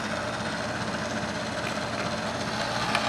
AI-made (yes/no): no